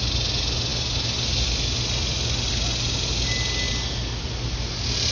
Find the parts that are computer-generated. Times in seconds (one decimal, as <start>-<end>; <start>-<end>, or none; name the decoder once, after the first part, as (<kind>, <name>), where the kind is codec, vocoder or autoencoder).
none